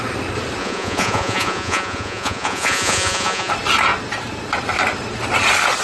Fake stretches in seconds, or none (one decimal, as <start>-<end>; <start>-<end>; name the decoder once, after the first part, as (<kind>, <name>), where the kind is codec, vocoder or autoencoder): 0.6-3.5 (vocoder, Vocos)